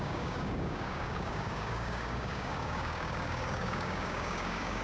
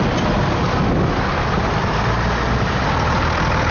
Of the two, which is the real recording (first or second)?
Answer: second